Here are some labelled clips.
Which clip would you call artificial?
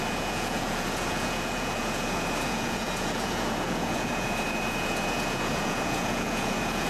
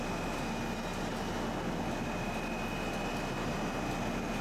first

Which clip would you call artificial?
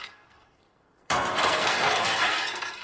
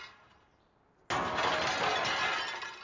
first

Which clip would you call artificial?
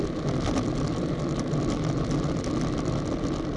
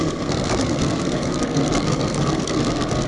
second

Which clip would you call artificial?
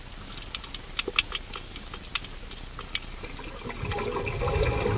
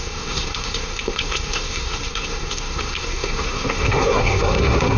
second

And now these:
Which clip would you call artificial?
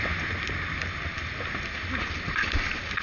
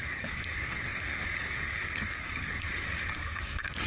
second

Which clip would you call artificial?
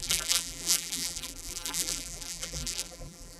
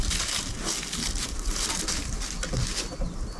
first